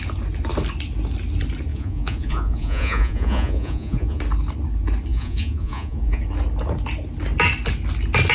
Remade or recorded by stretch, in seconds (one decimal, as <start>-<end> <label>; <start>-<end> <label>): 0.0-1.7 recorded; 1.7-4.2 remade; 4.2-5.1 recorded; 5.1-6.2 remade; 6.2-8.3 recorded

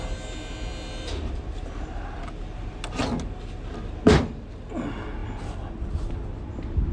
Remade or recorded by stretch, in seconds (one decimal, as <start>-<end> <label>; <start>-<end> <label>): 0.0-6.9 recorded

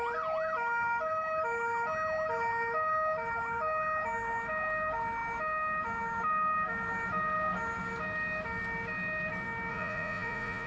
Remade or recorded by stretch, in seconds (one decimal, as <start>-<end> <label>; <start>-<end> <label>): 0.0-9.7 recorded; 9.7-10.7 remade

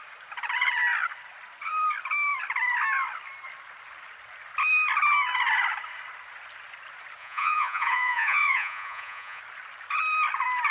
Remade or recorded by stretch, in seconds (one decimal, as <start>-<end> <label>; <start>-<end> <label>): 0.0-7.2 recorded; 7.2-9.4 remade; 9.4-10.7 recorded

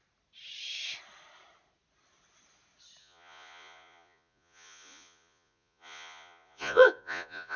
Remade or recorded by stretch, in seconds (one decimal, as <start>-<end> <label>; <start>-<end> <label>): 0.0-3.0 recorded; 3.0-7.6 remade

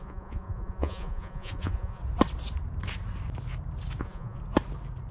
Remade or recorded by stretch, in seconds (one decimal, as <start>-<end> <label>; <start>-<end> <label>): 0.0-2.0 remade; 2.0-4.0 recorded; 4.0-4.4 remade; 4.4-5.1 recorded

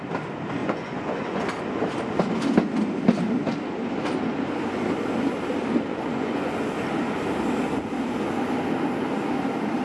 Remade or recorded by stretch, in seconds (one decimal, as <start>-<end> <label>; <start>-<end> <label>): 0.0-0.6 recorded; 0.6-1.4 remade; 1.4-5.9 recorded; 5.9-6.5 remade; 6.5-9.8 recorded